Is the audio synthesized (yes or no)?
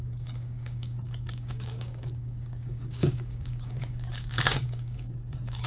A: yes